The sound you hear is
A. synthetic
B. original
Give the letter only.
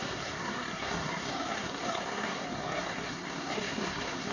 A